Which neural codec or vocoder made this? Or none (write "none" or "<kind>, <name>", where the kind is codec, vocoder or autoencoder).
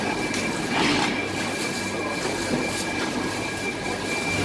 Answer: none